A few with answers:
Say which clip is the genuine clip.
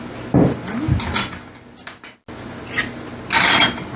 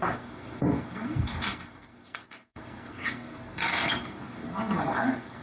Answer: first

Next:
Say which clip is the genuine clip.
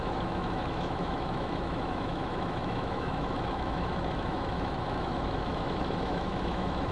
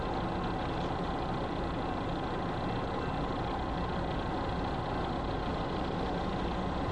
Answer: second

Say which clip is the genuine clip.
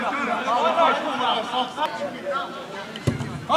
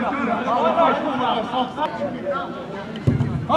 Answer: first